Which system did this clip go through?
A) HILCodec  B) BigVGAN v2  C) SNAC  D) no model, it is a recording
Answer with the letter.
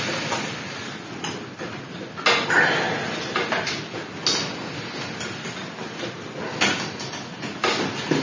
D